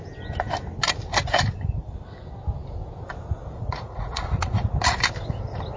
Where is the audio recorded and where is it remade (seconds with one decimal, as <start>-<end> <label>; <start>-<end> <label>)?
0.0-3.6 recorded; 3.6-4.7 remade; 4.7-5.8 recorded